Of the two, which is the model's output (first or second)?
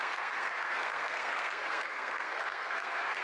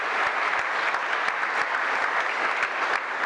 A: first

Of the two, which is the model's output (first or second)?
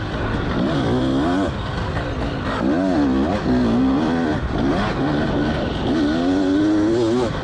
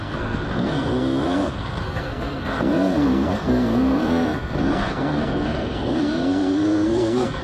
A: second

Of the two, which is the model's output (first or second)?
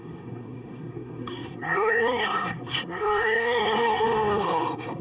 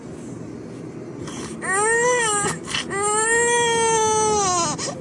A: first